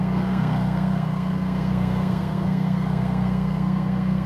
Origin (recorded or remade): remade